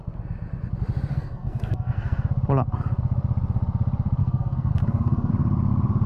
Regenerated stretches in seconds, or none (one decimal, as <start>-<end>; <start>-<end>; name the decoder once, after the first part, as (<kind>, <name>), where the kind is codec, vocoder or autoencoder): 1.1-2.2 (codec, SNAC); 4.2-5.3